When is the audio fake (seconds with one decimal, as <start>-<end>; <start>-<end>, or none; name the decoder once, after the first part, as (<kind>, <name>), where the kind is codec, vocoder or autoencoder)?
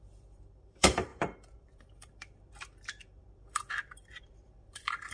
0.0-5.1 (vocoder, BigVGAN v2)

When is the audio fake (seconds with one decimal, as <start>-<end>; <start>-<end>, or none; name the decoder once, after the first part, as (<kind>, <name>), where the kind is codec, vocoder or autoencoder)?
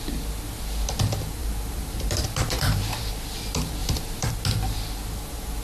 1.4-3.1 (vocoder, BigVGAN v2); 3.8-4.3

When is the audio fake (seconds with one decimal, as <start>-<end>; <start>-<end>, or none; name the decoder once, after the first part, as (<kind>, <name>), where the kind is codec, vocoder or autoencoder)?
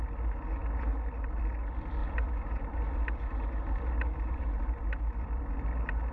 2.0-5.1 (vocoder, BigVGAN v2)